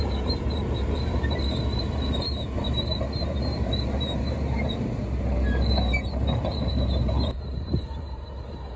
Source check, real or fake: fake